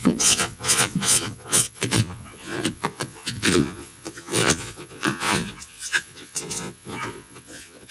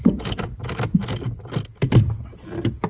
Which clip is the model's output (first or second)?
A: first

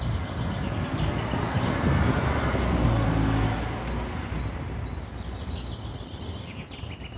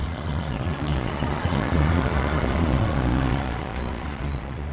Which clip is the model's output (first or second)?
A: second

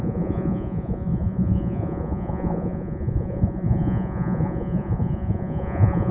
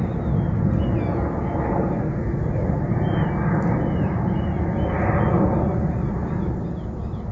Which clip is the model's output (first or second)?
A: first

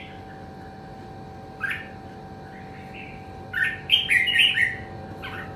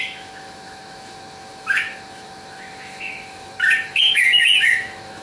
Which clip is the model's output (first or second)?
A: second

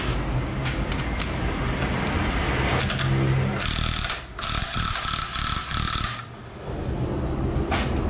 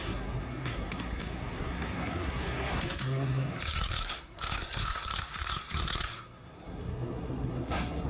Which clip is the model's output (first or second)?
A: second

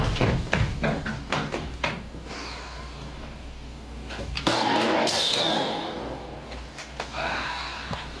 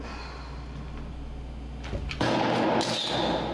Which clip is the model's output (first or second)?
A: first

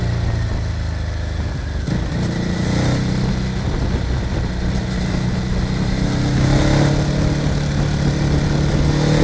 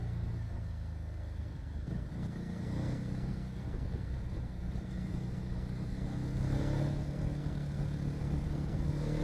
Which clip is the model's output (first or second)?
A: second